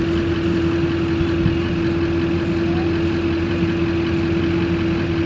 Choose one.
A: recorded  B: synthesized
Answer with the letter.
A